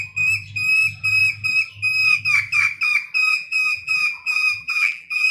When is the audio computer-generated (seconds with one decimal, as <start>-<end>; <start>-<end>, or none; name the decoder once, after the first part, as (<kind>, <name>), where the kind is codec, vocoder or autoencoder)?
3.3-5.3 (vocoder, BigVGAN v2)

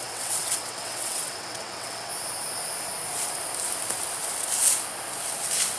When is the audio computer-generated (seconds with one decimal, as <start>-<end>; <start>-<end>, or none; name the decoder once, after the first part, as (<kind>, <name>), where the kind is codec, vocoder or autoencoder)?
0.0-2.1 (vocoder, WaveNeXt)

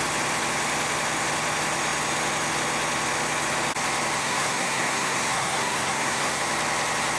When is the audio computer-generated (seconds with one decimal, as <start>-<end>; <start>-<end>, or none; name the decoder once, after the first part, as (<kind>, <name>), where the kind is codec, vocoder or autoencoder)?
4.2-6.4 (codec, SNAC)

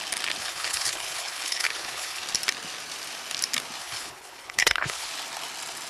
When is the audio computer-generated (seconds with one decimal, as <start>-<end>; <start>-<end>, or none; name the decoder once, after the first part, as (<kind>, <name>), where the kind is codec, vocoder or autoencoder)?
0.4-2.2 (codec, HILCodec); 3.8-5.1